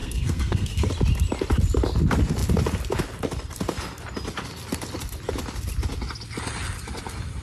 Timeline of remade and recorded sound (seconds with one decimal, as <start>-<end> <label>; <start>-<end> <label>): 0.0-0.9 remade; 0.9-7.4 recorded